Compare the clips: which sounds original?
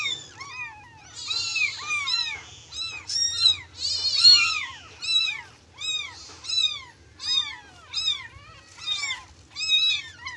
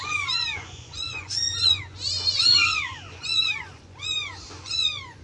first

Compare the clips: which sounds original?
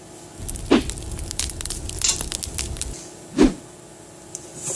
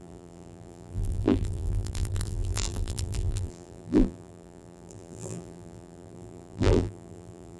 first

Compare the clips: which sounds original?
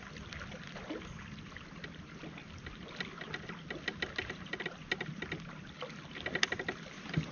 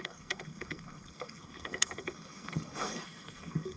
first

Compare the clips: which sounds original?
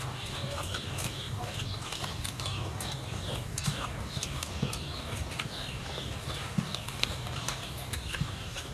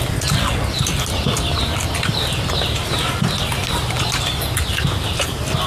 second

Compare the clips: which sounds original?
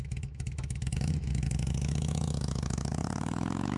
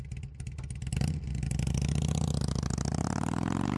second